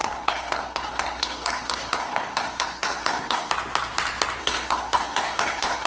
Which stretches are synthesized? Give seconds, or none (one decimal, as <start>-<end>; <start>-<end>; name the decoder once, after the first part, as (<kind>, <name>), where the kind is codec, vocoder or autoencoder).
0.0-3.5 (codec, SNAC); 4.4-5.9